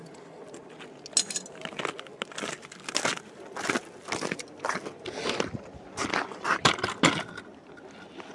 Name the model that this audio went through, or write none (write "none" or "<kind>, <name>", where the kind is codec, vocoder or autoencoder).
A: none